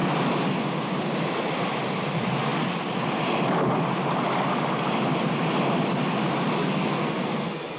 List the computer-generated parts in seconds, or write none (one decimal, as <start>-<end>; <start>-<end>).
6.6-7.8